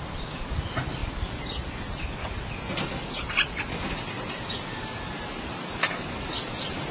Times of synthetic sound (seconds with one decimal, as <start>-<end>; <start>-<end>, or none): 0.0-1.0; 3.3-6.9